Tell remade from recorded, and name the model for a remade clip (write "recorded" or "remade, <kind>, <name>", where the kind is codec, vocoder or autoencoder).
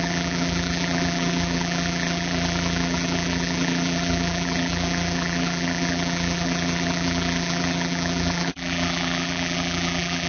remade, vocoder, BigVGAN v2